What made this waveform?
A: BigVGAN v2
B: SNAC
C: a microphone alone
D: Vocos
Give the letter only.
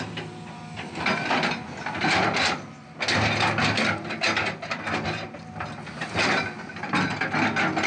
C